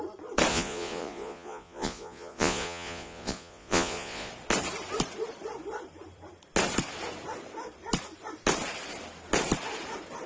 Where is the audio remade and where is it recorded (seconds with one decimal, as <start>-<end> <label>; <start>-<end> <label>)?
0.0-0.5 recorded; 0.5-4.3 remade; 4.3-10.3 recorded